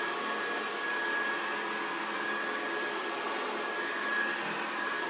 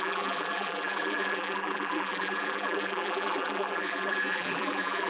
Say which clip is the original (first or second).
first